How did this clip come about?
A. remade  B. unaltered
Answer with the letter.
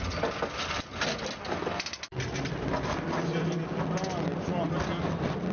B